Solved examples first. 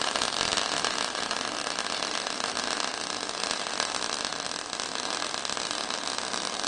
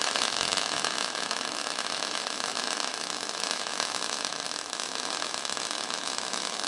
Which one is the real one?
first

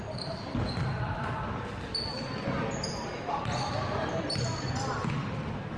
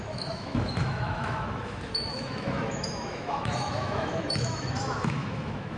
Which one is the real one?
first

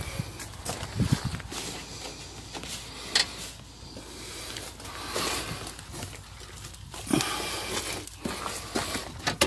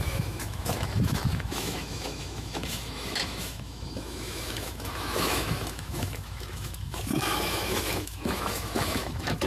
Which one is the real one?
first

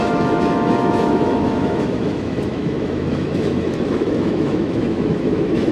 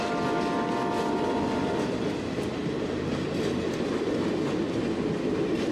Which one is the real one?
second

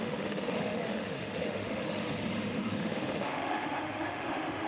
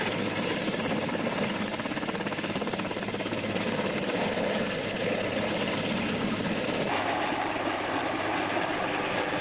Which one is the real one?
second